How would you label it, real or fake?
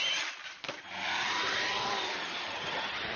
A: real